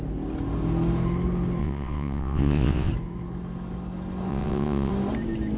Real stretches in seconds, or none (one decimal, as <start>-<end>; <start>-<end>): 0.0-1.6; 2.9-4.3; 4.9-5.6